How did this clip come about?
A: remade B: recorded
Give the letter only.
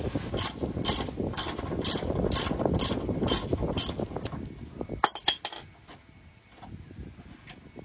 B